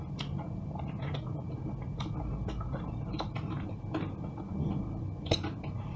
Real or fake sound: real